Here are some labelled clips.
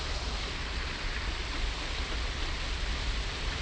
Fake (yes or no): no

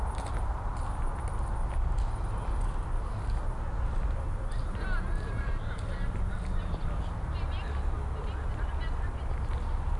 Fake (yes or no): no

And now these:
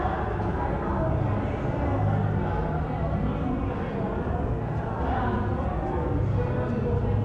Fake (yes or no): no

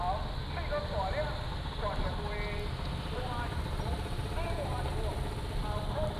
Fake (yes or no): no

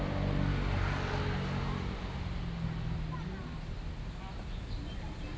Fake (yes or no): no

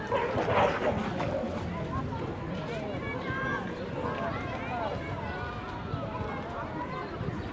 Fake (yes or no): no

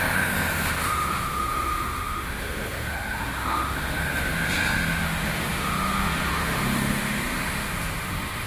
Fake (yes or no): yes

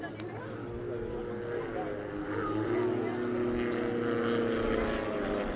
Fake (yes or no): no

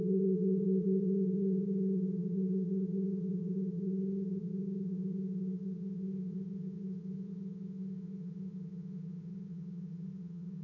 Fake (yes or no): yes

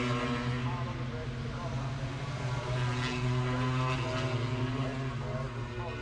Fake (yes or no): no